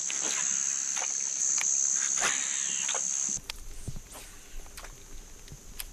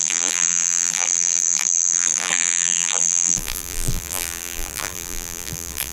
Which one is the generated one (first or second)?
second